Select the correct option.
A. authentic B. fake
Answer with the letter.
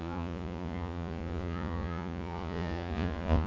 B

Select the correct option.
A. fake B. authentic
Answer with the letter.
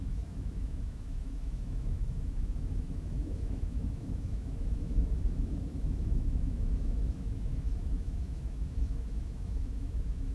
A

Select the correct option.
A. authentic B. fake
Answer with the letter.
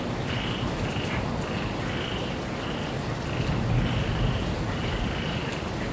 A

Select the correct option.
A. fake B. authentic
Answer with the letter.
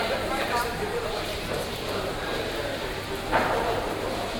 A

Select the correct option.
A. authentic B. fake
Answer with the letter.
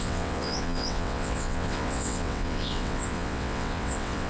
B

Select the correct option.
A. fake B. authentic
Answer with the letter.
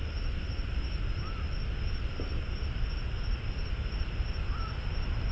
B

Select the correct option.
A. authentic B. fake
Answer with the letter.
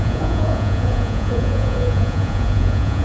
B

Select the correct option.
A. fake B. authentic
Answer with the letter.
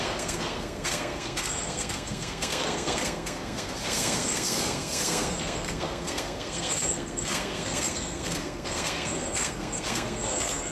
A